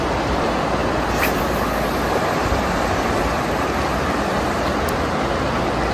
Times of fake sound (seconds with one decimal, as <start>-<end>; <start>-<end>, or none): 0.8-1.4